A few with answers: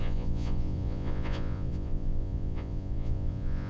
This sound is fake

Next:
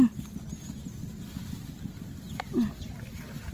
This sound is real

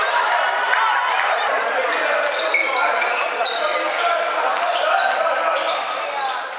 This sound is real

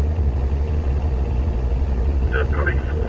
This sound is fake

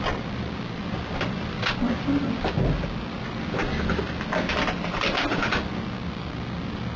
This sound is real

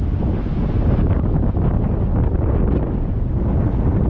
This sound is real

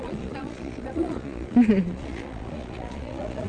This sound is fake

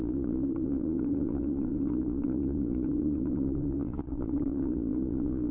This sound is fake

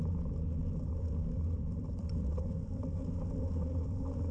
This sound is real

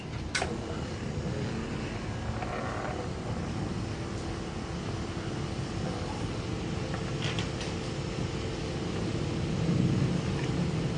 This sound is real